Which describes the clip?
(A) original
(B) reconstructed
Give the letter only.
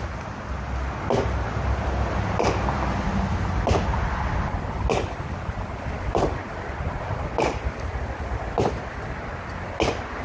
A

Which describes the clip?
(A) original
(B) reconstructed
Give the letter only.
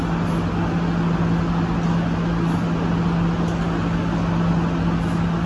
A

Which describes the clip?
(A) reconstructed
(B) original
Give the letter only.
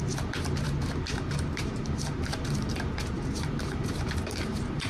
A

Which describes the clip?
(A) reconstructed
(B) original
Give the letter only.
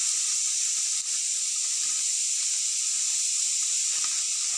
B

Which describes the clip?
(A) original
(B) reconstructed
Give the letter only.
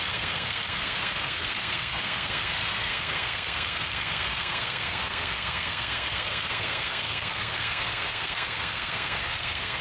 B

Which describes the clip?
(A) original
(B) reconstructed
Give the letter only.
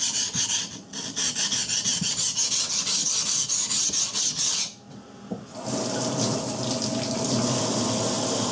A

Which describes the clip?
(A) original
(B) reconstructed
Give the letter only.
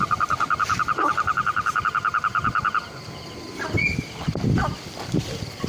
A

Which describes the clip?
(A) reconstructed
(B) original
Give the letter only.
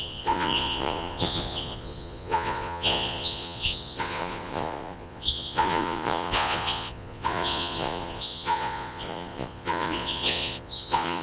A